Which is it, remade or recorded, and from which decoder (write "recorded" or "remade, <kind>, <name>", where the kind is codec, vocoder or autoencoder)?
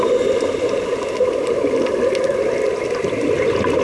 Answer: recorded